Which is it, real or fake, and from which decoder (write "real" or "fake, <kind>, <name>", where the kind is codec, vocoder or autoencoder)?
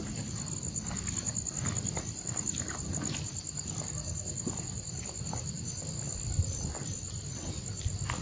real